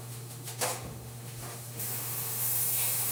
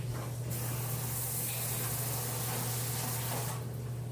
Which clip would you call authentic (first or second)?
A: second